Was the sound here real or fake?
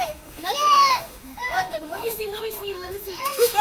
fake